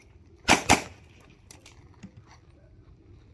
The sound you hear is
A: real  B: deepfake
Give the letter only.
B